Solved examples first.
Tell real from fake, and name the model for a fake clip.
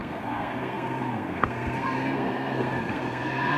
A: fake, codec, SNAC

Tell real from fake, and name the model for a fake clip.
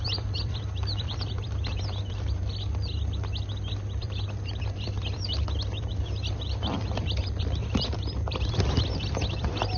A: fake, vocoder, BigVGAN v2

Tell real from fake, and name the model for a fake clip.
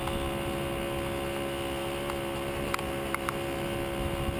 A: real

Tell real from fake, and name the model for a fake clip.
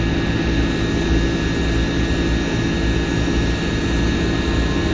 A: real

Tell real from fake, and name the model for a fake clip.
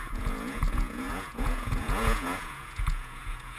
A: fake, vocoder, Vocos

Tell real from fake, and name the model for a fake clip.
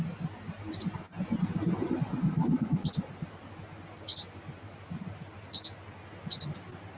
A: real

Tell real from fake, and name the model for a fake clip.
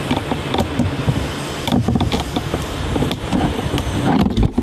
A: fake, vocoder, BigVGAN v2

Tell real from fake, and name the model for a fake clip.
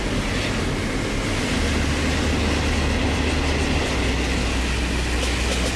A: real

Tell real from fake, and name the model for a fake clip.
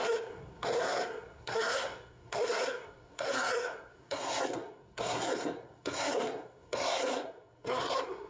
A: fake, codec, SNAC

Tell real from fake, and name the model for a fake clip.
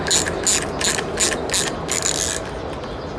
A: real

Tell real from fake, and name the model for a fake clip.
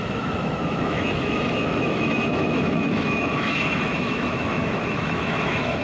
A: fake, autoencoder, DAC-VAE